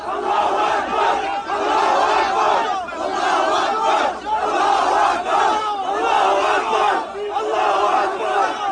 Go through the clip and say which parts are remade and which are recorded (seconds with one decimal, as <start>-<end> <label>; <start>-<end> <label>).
0.0-8.7 recorded

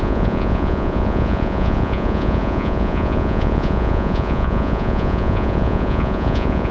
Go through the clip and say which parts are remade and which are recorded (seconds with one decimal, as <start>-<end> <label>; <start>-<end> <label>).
0.0-6.7 remade

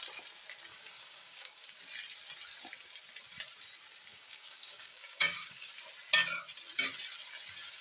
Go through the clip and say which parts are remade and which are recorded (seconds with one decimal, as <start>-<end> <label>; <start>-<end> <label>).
0.0-0.7 recorded; 0.7-1.8 remade; 1.8-4.1 recorded; 4.1-5.7 remade; 5.7-7.8 recorded